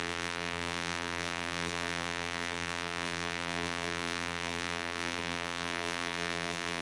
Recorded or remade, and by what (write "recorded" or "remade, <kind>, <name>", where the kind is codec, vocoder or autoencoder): remade, vocoder, BigVGAN v2